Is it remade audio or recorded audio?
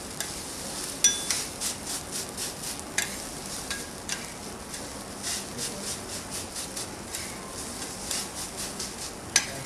recorded